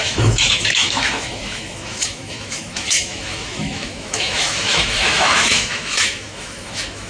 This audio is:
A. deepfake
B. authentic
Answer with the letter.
A